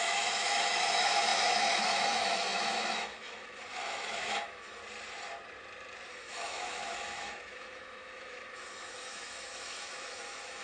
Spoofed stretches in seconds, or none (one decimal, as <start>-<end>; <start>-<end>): 0.0-4.8; 6.1-10.6